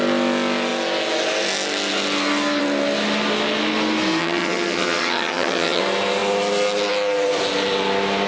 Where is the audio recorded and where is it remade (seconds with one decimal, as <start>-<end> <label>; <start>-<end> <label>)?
0.0-4.2 recorded; 4.2-5.8 remade; 5.8-8.3 recorded